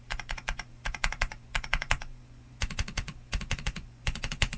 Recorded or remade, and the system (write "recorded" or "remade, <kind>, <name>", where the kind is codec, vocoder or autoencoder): remade, vocoder, Vocos